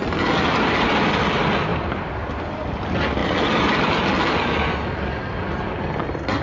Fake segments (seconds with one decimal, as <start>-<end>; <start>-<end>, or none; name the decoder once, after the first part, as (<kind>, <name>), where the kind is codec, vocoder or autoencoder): 1.7-2.4 (vocoder, BigVGAN v2)